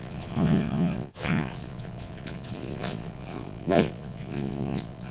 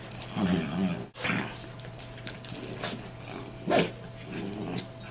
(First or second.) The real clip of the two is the second